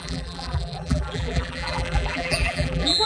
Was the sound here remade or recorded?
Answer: remade